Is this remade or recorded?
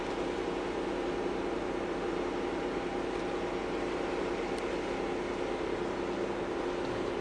recorded